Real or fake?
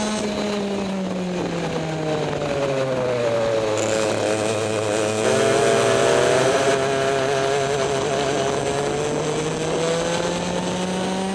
real